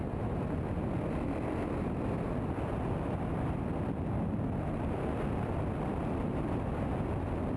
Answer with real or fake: real